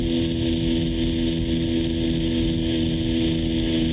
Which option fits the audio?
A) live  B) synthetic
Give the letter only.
A